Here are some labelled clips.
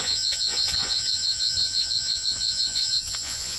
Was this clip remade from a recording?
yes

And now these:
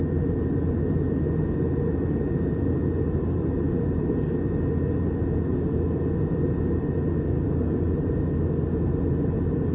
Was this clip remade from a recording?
no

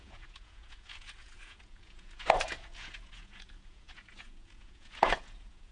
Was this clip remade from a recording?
yes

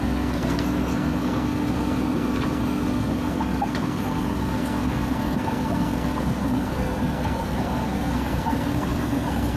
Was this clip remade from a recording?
yes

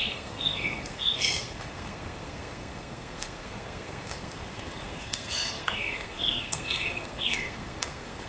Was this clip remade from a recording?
yes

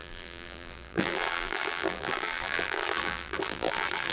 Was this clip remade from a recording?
yes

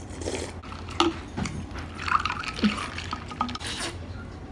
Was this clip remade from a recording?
no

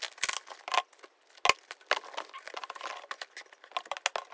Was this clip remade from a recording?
no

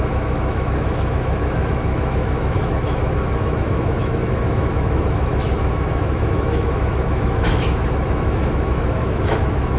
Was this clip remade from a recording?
yes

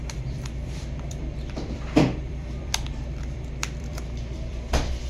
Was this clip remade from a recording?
yes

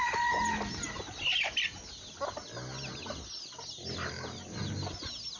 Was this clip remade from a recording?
no